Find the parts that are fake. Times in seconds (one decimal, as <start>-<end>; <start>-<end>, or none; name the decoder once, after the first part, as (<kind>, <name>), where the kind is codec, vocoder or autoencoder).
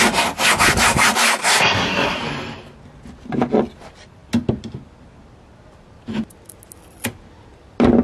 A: 1.4-2.2 (codec, SNAC)